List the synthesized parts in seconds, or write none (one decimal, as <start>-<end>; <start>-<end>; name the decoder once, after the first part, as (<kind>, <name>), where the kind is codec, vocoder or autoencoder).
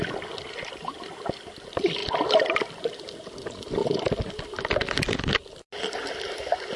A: none